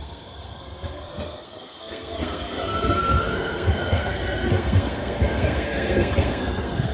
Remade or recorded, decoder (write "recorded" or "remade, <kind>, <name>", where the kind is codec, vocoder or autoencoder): remade, codec, SNAC